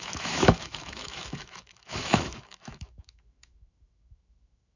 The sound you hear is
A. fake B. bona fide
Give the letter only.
A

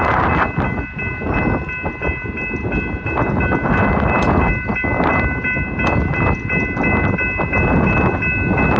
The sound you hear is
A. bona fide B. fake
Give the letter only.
A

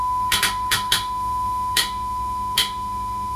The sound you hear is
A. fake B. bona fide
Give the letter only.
A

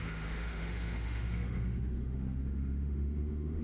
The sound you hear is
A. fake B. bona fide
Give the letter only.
A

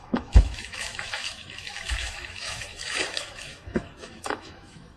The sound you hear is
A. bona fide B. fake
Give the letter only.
B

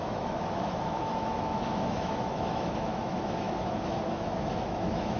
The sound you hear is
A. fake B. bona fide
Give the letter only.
A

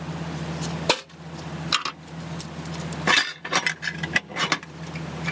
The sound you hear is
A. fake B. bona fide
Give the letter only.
B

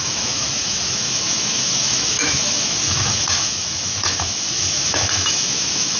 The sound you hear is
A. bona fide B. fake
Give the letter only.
B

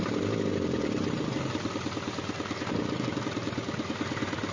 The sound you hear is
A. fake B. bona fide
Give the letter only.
B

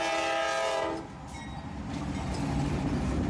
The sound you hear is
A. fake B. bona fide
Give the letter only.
B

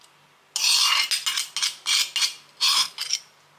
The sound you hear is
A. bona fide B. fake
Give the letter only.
A